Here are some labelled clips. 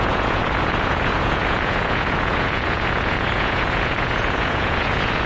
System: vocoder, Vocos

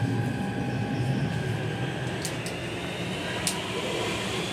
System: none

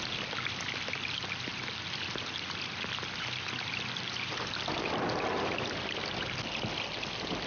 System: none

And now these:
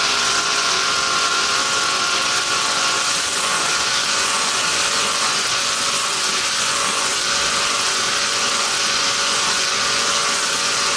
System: vocoder, Vocos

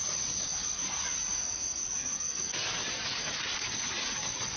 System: none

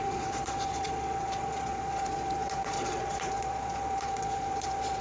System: vocoder, Vocos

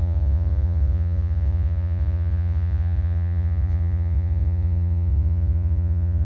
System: vocoder, Vocos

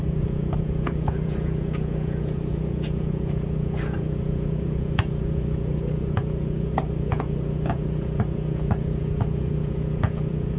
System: vocoder, Vocos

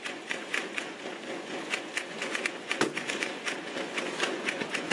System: vocoder, Vocos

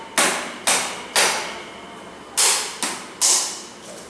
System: none